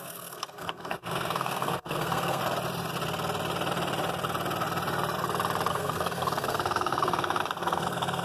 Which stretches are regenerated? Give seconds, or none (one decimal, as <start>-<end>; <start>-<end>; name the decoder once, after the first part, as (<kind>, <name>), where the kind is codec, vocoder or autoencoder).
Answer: 0.0-2.4 (codec, SNAC); 5.7-8.2